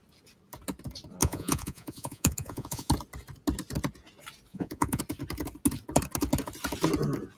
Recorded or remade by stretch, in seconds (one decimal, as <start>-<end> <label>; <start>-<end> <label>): 0.0-1.2 recorded; 1.2-2.9 remade; 2.9-4.5 recorded; 4.5-5.0 remade; 5.0-7.4 recorded